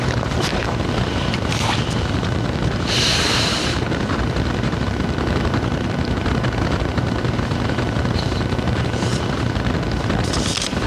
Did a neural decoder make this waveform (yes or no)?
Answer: yes